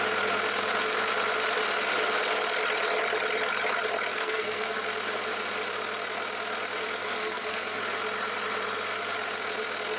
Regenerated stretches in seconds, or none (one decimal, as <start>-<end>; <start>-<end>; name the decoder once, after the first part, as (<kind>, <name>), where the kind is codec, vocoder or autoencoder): 4.1-4.8 (codec, SNAC); 7.0-7.8